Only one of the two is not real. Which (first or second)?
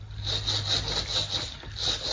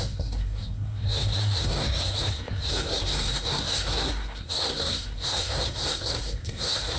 second